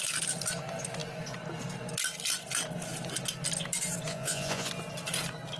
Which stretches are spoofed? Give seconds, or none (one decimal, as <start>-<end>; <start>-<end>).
4.1-4.7